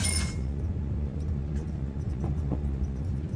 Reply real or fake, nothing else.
fake